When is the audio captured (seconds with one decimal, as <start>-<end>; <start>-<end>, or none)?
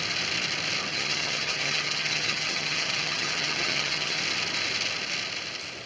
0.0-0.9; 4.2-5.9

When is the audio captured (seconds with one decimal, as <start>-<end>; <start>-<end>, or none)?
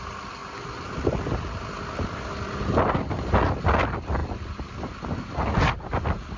0.0-6.4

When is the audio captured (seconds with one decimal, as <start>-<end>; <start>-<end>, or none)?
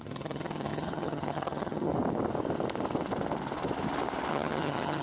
1.9-4.3